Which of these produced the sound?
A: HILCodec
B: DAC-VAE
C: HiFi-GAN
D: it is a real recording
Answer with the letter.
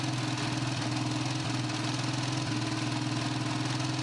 D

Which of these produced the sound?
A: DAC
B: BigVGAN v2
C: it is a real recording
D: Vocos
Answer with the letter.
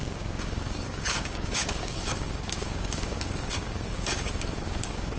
A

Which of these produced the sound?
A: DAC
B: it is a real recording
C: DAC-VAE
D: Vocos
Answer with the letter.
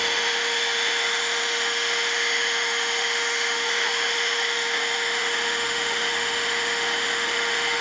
C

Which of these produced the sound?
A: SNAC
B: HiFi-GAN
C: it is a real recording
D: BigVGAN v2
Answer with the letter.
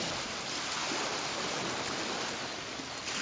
C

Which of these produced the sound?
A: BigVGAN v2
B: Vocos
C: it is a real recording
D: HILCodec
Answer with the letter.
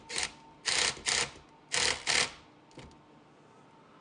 C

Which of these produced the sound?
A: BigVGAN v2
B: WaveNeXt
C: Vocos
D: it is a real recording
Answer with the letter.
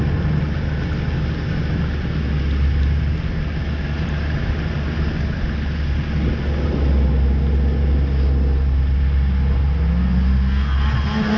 D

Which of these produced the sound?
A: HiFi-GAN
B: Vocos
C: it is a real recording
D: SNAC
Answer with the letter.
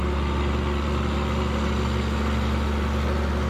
C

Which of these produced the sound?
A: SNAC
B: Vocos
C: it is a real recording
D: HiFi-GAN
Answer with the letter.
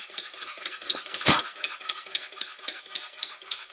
A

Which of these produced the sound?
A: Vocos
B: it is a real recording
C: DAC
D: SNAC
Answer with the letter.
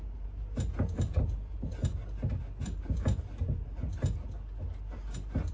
B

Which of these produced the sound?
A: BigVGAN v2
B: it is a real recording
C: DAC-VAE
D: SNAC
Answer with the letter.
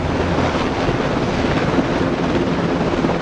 B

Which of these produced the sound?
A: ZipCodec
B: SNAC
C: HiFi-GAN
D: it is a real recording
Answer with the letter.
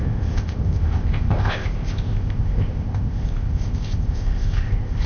A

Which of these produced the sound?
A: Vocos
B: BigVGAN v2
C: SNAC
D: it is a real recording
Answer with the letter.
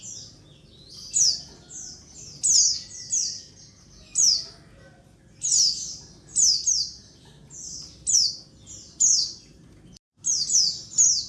D